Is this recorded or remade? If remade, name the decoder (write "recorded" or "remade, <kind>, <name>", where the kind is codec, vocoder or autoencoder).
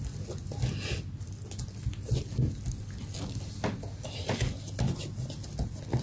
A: recorded